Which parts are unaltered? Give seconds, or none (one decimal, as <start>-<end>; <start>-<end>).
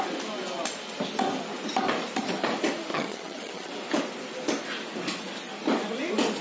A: 0.0-2.9; 3.7-6.4